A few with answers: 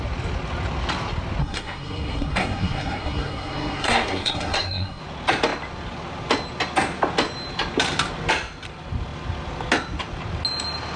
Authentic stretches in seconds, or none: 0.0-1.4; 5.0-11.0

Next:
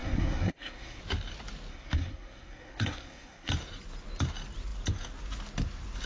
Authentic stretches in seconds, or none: 1.0-1.7; 3.5-6.1

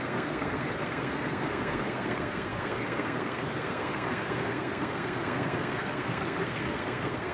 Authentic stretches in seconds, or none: none

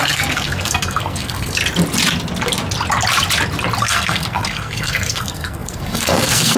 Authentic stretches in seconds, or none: 1.6-3.8

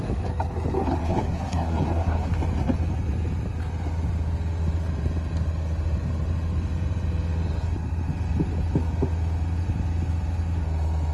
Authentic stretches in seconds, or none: 0.0-1.0; 2.3-11.1

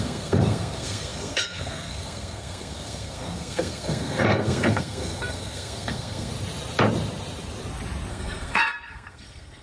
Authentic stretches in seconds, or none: 6.3-8.1